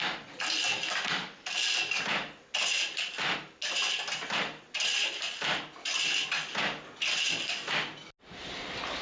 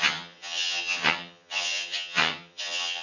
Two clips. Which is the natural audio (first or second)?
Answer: first